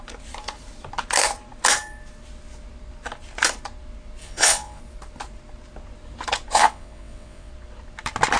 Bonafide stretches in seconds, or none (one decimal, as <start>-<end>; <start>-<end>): 0.0-4.2; 4.8-6.5; 7.5-8.4